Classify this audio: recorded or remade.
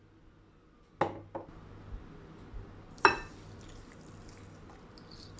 recorded